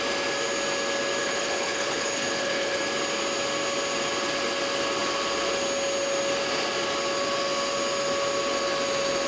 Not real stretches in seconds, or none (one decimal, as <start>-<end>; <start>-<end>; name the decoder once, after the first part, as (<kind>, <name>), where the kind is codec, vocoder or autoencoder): 1.2-2.8 (codec, HILCodec)